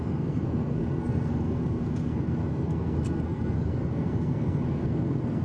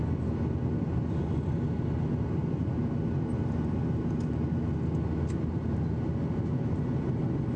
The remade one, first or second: first